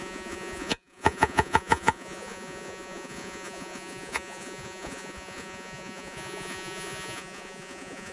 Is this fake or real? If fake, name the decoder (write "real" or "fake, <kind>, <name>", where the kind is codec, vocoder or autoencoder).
fake, vocoder, Vocos